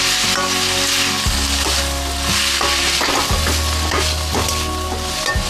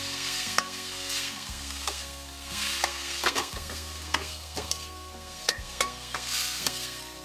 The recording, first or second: first